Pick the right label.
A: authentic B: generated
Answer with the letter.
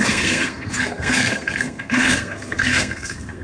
B